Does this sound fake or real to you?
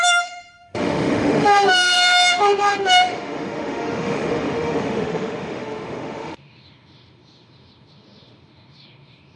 fake